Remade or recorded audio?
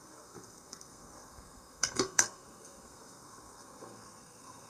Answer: remade